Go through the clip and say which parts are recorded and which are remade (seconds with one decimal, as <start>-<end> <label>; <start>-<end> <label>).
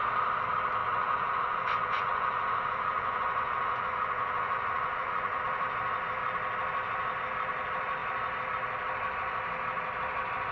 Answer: 0.0-0.8 recorded; 0.8-5.4 remade; 5.4-10.5 recorded